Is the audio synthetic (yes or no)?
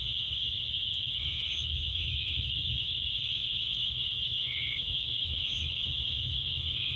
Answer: yes